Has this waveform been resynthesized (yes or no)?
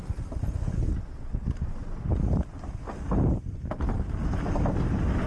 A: no